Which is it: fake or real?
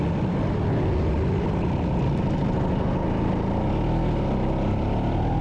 real